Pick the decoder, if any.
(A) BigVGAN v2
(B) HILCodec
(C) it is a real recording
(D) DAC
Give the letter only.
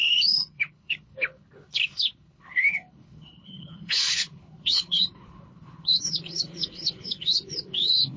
B